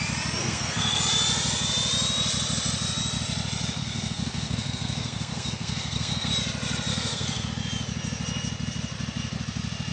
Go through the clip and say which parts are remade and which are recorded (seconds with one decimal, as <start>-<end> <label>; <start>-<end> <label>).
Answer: 0.0-0.4 recorded; 0.4-1.0 remade; 1.0-3.8 recorded; 3.8-6.3 remade; 6.3-6.9 recorded; 6.9-7.5 remade; 7.5-9.9 recorded